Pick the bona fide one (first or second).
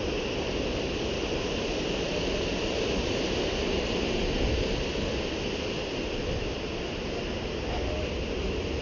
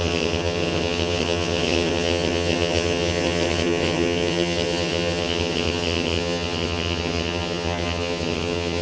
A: first